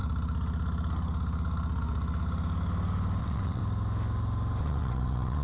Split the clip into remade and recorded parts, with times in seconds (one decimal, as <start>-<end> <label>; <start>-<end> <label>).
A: 0.0-3.2 recorded; 3.2-3.6 remade; 3.6-4.6 recorded; 4.6-5.4 remade